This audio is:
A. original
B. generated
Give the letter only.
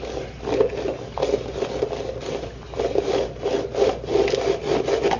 A